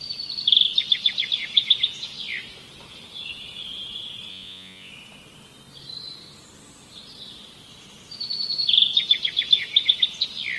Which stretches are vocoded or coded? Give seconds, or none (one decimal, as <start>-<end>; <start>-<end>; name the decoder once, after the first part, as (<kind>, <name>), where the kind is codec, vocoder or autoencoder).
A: 4.3-4.9 (vocoder, Vocos)